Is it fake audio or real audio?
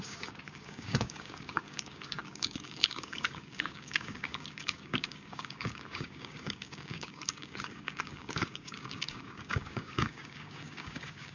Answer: fake